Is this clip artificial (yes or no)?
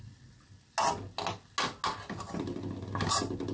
no